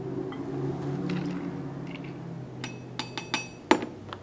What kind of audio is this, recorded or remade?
recorded